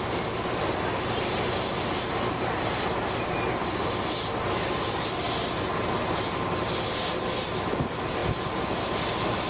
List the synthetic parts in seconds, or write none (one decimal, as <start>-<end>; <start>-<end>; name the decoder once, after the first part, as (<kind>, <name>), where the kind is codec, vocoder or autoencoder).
none